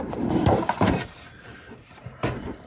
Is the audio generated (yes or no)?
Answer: yes